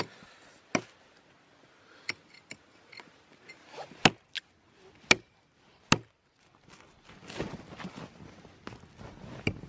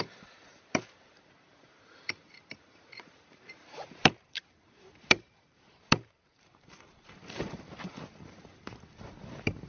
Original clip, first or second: first